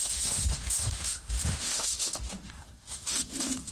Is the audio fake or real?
fake